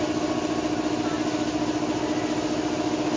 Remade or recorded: recorded